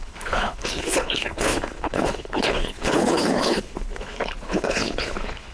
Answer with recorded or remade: remade